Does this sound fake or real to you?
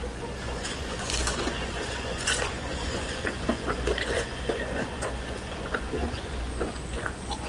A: fake